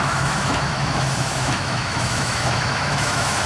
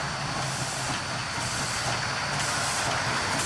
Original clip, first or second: second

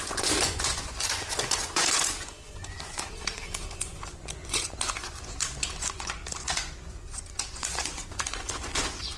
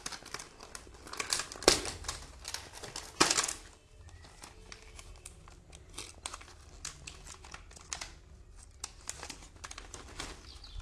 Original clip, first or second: second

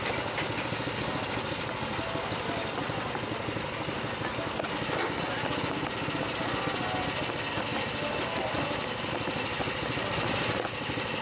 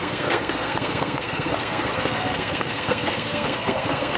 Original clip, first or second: first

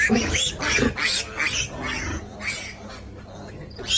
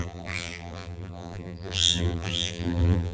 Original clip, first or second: first